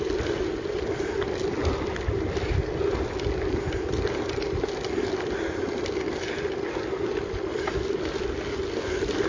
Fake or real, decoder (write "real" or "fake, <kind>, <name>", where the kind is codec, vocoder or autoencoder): real